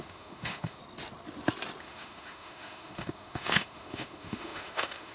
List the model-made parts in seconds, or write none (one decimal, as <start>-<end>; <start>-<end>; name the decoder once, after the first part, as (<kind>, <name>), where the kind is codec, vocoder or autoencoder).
0.0-0.8 (autoencoder, DAC-VAE); 1.8-5.1